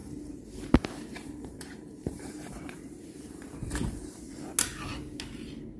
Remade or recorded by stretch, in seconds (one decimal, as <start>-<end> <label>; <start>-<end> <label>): 0.0-0.7 remade; 0.7-1.1 recorded; 1.1-4.0 remade; 4.0-5.8 recorded